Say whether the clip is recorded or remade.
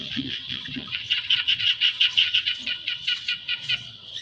remade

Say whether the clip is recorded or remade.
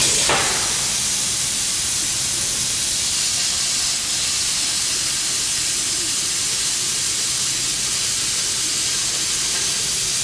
recorded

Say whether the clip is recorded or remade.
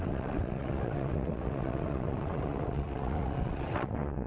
remade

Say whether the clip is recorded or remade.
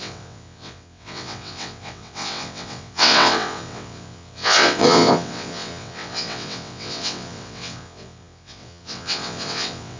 remade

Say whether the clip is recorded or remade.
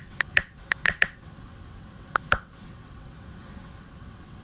remade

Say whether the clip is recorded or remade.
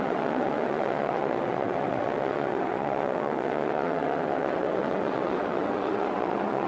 remade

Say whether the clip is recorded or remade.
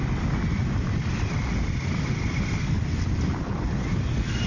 recorded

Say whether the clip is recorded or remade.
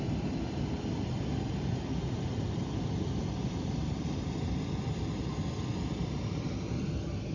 recorded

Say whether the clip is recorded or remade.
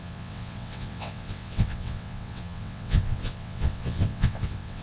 remade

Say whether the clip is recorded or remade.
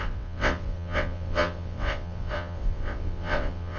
remade